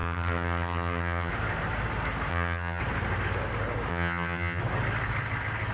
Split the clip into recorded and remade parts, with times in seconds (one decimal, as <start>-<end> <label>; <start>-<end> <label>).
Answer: 0.0-1.3 remade; 1.3-2.3 recorded; 2.3-2.8 remade; 2.8-3.9 recorded; 3.9-4.6 remade; 4.6-5.7 recorded